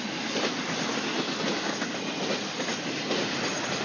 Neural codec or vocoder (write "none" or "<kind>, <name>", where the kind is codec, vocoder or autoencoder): none